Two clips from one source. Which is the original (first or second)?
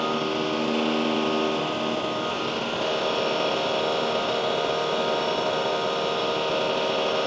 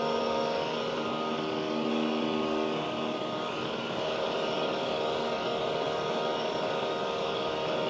first